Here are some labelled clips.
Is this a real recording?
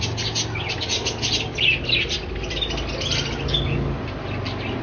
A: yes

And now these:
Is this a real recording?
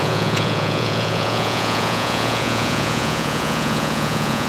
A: no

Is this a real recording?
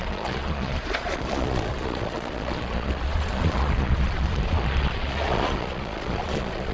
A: no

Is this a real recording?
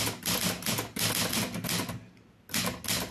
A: yes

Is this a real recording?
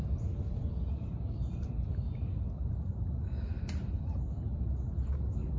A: yes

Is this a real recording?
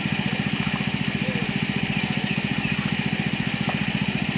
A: yes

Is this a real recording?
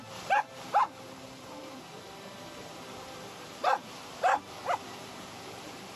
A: no